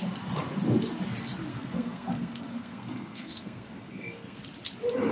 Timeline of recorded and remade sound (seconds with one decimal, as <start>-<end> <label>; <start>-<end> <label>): 0.0-1.5 recorded; 1.5-4.4 remade; 4.4-5.1 recorded